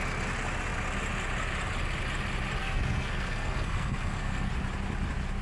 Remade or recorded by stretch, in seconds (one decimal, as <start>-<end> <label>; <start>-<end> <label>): 0.0-2.6 recorded; 2.6-4.5 remade; 4.5-5.4 recorded